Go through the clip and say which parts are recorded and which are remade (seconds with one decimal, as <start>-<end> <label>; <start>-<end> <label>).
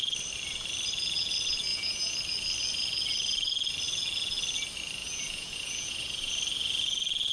0.0-1.7 recorded; 1.7-2.2 remade; 2.2-5.0 recorded; 5.0-6.3 remade; 6.3-7.3 recorded